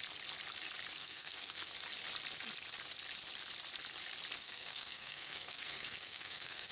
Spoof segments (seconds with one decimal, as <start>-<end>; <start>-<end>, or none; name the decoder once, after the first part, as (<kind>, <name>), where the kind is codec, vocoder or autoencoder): 1.0-1.7 (codec, SNAC); 4.4-6.7